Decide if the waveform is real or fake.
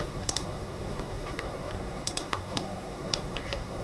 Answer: fake